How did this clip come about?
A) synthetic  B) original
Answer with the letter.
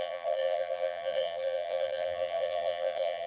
A